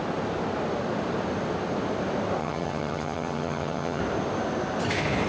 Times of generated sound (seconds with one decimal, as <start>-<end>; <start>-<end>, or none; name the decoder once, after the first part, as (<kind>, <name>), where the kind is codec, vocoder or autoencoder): 2.4-4.0 (vocoder, HiFi-GAN)